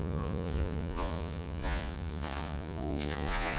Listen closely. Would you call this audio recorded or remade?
remade